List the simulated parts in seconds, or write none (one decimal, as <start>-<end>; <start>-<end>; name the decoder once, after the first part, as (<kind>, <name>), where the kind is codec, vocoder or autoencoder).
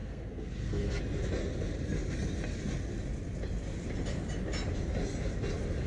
0.0-1.0 (codec, SNAC)